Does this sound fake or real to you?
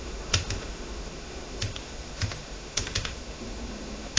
fake